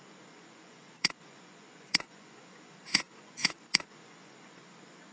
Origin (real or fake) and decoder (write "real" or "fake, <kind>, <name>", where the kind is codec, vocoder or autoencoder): fake, vocoder, Vocos